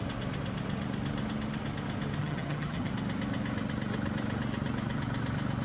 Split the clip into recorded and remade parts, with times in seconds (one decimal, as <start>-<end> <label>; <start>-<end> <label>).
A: 0.0-2.2 recorded; 2.2-2.9 remade; 2.9-5.6 recorded